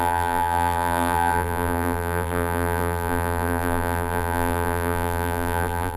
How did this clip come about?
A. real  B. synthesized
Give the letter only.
B